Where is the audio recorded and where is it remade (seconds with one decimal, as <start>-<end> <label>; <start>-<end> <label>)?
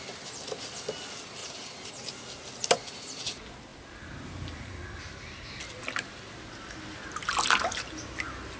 0.0-1.4 recorded; 1.4-1.9 remade; 1.9-8.6 recorded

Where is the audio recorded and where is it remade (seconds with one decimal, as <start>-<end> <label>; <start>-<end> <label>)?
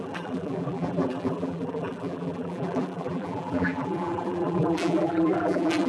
0.0-5.9 remade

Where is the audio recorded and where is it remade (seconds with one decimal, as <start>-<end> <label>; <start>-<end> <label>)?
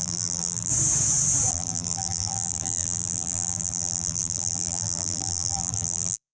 0.0-0.7 remade; 0.7-1.5 recorded; 1.5-6.3 remade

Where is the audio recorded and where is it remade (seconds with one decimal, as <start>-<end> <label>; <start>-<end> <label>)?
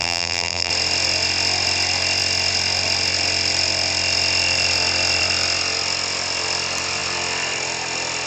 0.0-0.7 remade; 0.7-8.3 recorded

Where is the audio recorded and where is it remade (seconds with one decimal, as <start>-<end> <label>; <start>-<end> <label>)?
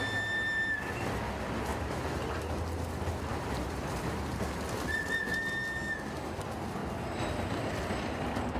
0.0-1.7 recorded; 1.7-2.4 remade; 2.4-3.3 recorded; 3.3-4.4 remade; 4.4-8.6 recorded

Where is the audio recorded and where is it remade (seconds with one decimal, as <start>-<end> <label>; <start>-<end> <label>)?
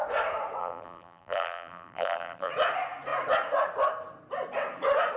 0.0-0.6 recorded; 0.6-2.5 remade; 2.5-5.2 recorded